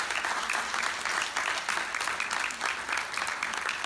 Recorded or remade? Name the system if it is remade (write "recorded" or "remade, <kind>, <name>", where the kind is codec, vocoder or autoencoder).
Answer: recorded